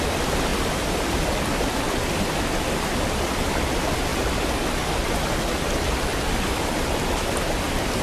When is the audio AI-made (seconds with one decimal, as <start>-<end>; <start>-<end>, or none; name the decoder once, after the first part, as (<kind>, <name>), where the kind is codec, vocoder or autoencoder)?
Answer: 0.5-3.3 (vocoder, BigVGAN v2); 6.1-6.7